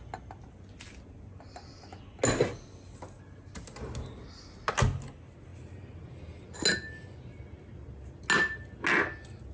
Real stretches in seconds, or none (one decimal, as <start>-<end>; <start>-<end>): 0.0-9.5